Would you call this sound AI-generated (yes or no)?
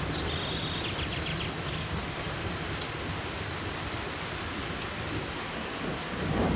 no